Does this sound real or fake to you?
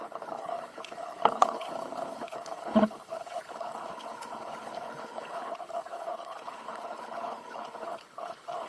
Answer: fake